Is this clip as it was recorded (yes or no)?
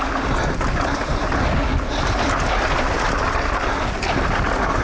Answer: yes